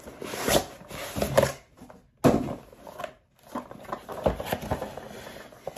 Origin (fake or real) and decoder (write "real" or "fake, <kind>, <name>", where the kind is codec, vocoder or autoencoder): real